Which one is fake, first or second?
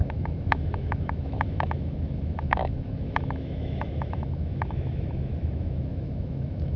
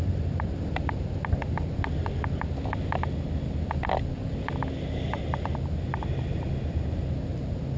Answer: first